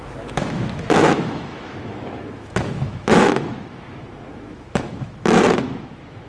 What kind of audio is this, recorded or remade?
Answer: remade